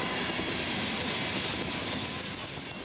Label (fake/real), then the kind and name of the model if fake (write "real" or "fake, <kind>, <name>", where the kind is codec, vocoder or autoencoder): real